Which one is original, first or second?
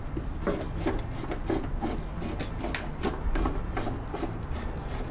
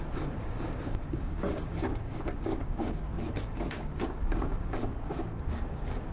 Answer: first